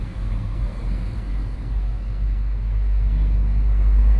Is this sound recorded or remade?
remade